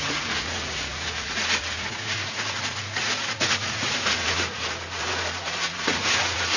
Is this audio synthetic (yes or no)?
yes